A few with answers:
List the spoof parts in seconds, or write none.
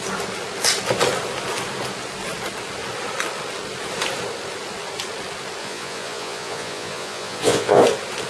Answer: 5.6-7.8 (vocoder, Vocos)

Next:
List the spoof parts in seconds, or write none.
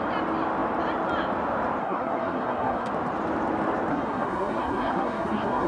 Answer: 1.8-2.9 (codec, SNAC); 3.9-5.7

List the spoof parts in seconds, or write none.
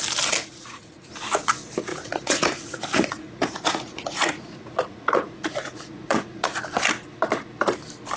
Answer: 0.4-1.1 (vocoder, Vocos); 1.9-6.6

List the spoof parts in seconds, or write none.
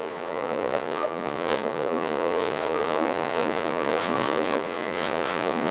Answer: 0.0-5.7 (vocoder, Vocos)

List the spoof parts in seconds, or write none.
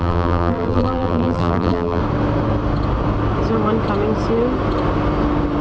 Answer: 0.0-2.0 (vocoder, BigVGAN v2)